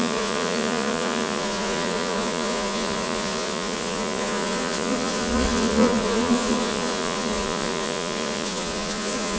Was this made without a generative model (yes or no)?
no